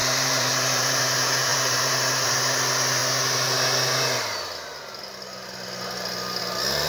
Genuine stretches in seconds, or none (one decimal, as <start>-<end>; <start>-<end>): 1.0-1.5; 2.3-6.9